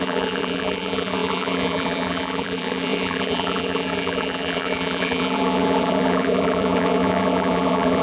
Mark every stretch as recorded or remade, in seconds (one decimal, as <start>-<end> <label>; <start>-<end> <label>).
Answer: 0.0-8.0 remade